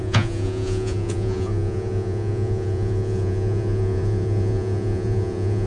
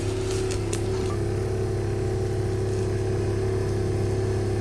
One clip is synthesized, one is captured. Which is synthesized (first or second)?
first